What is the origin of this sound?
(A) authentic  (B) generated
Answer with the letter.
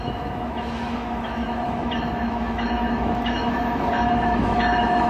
B